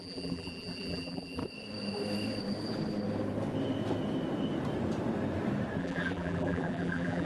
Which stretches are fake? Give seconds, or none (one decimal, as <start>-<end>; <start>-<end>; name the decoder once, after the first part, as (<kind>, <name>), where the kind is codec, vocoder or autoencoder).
0.0-1.4 (vocoder, BigVGAN v2); 5.8-7.3